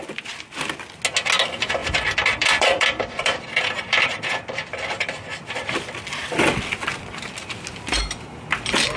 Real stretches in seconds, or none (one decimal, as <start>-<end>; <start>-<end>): 0.0-1.8; 6.4-9.0